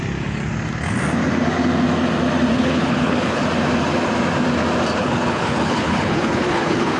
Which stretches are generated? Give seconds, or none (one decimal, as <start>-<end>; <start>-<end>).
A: 2.5-3.4; 5.0-7.0